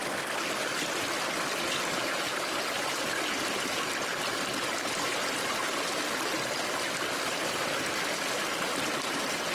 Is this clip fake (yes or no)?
no